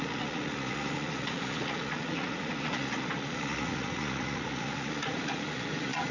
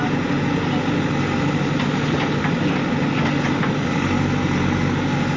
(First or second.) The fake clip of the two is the first